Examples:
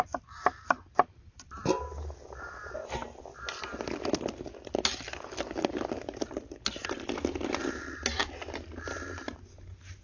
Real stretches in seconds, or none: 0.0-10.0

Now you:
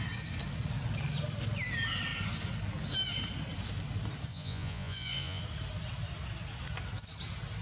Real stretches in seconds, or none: 0.0-4.3; 5.4-7.6

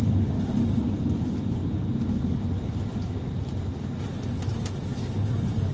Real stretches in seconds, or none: 0.0-5.7

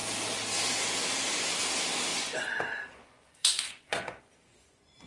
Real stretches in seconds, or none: 0.0-2.1

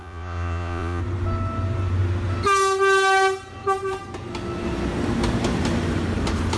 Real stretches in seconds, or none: 1.0-6.6

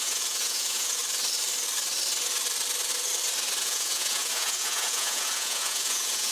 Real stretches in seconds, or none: 1.0-3.6

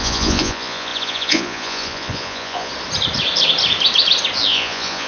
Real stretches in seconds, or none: 2.7-4.5